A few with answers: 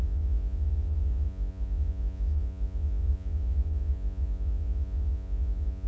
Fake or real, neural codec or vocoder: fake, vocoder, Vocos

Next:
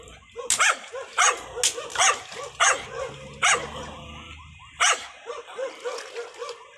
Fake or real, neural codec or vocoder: real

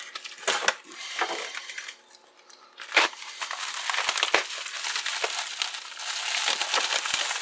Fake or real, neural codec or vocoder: real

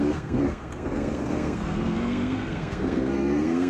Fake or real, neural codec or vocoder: fake, codec, SNAC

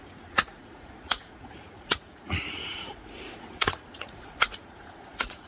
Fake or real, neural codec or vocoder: fake, vocoder, Vocos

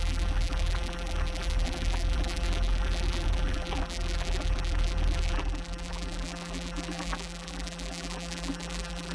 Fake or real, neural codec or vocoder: fake, vocoder, BigVGAN v2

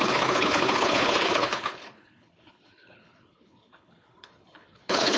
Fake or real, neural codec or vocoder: fake, codec, HILCodec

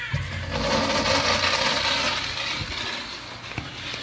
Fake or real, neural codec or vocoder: real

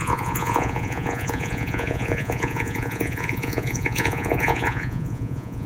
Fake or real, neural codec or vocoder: fake, vocoder, Vocos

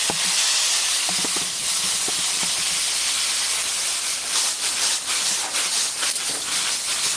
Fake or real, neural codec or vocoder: fake, vocoder, BigVGAN v2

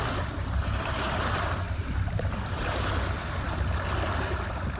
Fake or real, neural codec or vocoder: fake, vocoder, BigVGAN v2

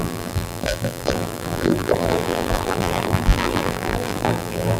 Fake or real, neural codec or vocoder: fake, vocoder, BigVGAN v2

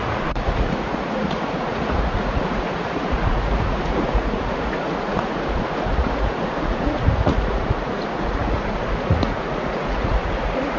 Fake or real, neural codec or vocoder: fake, vocoder, Vocos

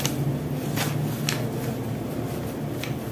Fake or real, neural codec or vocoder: real